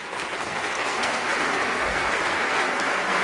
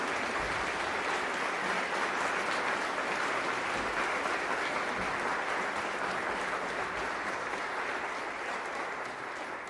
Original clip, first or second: second